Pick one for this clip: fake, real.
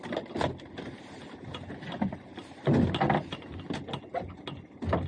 real